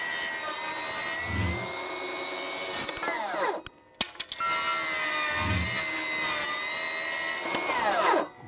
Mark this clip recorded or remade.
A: recorded